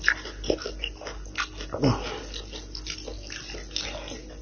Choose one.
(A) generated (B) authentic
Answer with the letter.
B